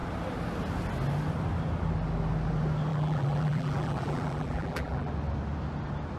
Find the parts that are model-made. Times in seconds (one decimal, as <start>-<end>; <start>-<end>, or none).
2.9-5.1